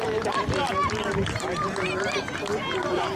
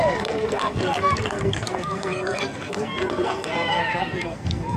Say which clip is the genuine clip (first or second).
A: first